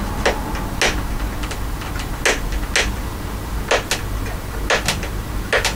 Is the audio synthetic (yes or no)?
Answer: no